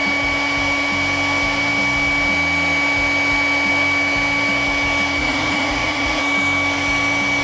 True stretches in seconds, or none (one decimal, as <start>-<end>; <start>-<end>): 0.0-5.2; 6.2-7.4